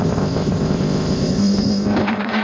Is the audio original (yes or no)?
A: no